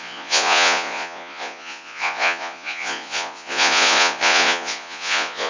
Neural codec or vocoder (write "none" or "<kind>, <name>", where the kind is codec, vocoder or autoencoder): vocoder, Vocos